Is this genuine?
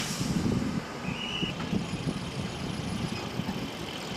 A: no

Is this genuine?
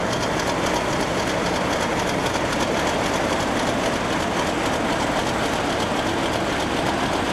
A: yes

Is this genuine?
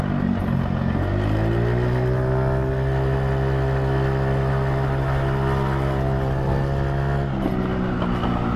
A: yes